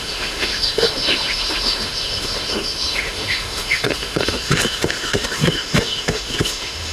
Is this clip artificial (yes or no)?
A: yes